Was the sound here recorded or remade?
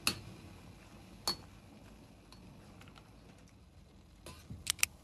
recorded